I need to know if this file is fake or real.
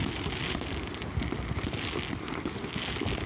real